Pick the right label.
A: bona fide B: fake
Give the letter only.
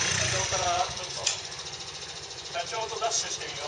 B